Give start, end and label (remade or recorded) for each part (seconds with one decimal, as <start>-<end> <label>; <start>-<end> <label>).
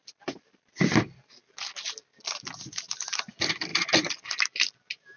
0.0-1.2 remade; 1.2-3.7 recorded; 3.7-4.2 remade; 4.2-5.2 recorded